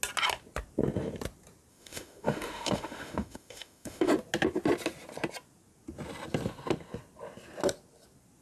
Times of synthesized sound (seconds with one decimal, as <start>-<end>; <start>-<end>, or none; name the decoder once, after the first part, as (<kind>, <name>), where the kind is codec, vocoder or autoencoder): 1.7-4.1 (autoencoder, DAC-VAE)